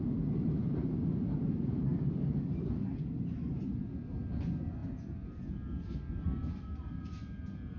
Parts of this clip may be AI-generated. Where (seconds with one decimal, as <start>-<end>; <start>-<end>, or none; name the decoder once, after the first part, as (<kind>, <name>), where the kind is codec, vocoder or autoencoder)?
none